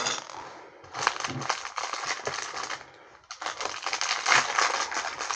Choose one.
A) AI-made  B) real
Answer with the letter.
B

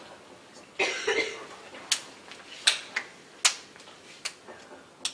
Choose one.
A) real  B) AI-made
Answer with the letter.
A